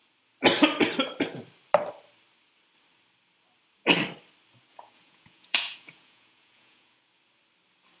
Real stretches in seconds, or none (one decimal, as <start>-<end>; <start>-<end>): 0.0-4.7; 7.0-8.0